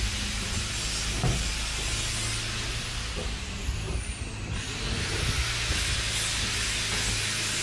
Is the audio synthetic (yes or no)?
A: no